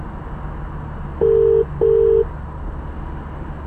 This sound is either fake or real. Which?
real